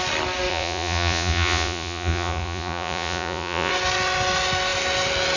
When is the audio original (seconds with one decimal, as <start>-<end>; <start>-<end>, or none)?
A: 0.0-0.5; 3.7-5.4

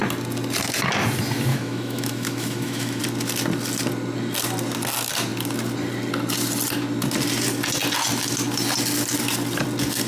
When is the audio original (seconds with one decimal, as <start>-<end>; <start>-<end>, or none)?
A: 0.0-1.5; 3.0-10.1

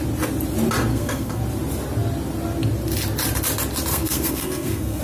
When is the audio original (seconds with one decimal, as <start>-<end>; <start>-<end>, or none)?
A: 0.0-0.9; 1.4-3.9

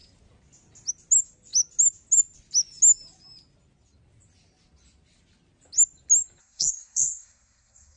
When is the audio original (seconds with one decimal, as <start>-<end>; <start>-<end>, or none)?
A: 0.0-6.4